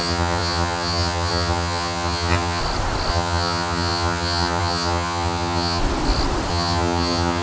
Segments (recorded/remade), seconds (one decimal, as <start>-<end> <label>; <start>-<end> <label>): 0.0-2.6 remade; 2.6-3.1 recorded; 3.1-5.8 remade; 5.8-6.5 recorded; 6.5-7.4 remade